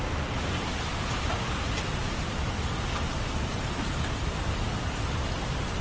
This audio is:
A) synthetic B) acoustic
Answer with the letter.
B